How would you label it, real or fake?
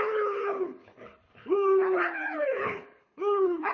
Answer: fake